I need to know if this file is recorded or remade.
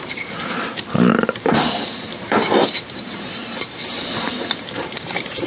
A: remade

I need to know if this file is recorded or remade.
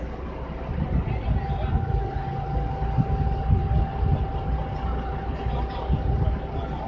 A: recorded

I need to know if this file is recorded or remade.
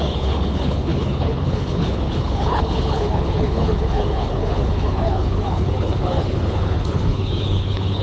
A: remade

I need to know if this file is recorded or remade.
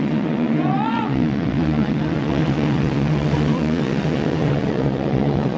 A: remade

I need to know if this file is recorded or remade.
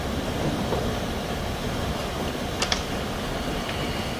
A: recorded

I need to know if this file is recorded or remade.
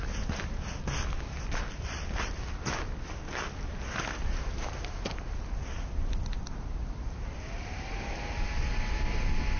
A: recorded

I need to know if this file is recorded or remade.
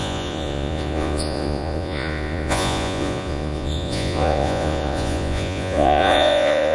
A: remade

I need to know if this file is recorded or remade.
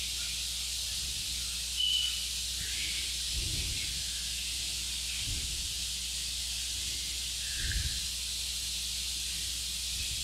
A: recorded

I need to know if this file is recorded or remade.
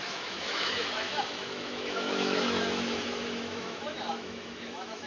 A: remade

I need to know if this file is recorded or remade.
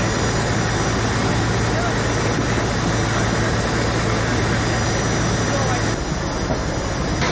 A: recorded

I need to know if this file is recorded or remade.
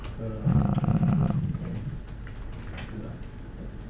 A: recorded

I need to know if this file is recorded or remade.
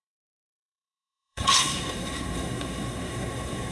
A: remade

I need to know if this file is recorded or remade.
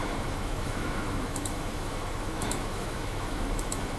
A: remade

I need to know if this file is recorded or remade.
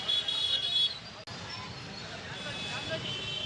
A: recorded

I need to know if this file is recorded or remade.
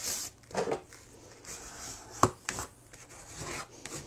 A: recorded